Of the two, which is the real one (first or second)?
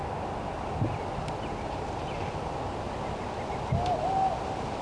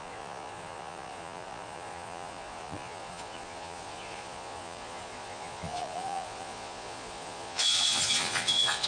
first